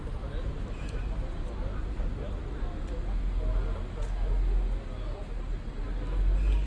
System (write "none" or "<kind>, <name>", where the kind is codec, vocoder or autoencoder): none